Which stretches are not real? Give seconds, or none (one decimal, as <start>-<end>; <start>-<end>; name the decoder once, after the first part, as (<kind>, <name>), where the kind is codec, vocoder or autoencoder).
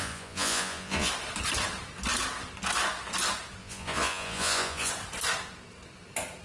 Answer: 0.0-1.1 (vocoder, Vocos); 3.6-4.9